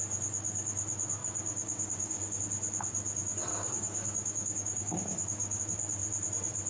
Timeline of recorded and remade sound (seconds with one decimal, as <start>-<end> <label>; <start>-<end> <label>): 0.0-1.2 recorded; 1.2-2.4 remade; 2.4-3.5 recorded; 3.5-5.6 remade; 5.6-6.7 recorded